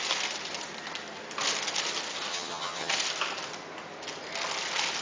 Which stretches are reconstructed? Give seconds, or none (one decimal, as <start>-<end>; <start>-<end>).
2.3-2.9